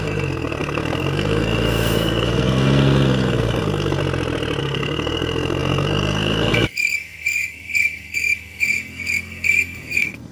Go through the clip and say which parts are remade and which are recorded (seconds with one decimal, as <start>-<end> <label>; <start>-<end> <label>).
0.0-4.0 remade; 4.0-4.6 recorded; 4.6-10.3 remade